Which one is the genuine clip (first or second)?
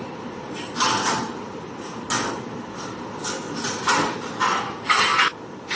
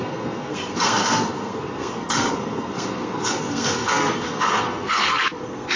first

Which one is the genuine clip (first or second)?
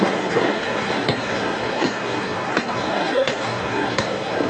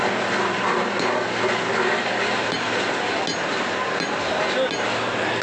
second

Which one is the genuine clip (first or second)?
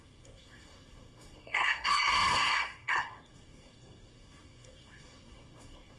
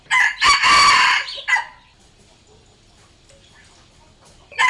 second